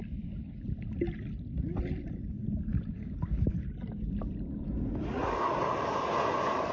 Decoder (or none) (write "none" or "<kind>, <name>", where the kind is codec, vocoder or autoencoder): none